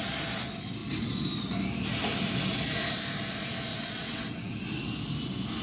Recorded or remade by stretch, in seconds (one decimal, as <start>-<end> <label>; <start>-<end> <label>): 0.0-3.7 recorded; 3.7-4.5 remade; 4.5-5.6 recorded

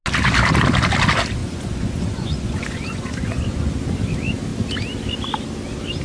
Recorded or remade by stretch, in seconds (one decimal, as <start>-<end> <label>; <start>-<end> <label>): 0.0-1.4 recorded; 1.4-3.7 remade; 3.7-6.0 recorded

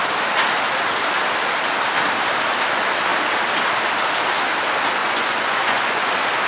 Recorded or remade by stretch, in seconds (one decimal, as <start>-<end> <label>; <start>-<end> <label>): 0.0-5.0 recorded; 5.0-6.1 remade; 6.1-6.5 recorded

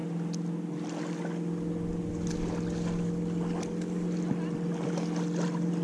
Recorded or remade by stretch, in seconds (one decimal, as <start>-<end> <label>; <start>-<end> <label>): 0.0-5.8 recorded

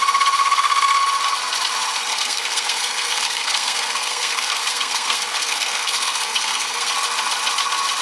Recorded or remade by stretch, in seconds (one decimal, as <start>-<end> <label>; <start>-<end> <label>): 0.0-2.1 recorded; 2.1-6.9 remade; 6.9-8.0 recorded

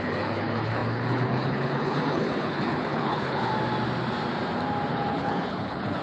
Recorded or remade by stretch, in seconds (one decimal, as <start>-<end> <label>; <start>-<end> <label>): 0.0-3.5 remade; 3.5-4.9 recorded; 4.9-6.0 remade

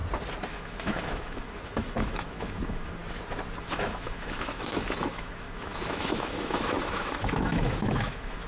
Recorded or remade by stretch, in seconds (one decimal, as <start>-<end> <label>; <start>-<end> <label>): 0.0-0.5 recorded; 0.5-3.0 remade; 3.0-3.6 recorded; 3.6-8.5 remade